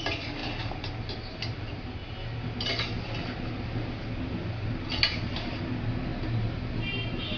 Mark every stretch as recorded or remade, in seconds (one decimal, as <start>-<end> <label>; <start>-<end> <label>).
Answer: 0.0-7.4 recorded